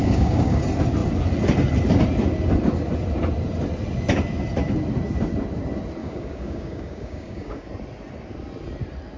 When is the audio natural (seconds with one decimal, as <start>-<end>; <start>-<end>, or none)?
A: 0.6-6.0; 7.7-9.2